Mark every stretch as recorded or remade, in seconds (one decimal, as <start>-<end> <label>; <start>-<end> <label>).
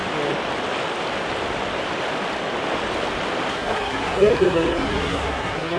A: 0.0-3.5 recorded; 3.5-5.8 remade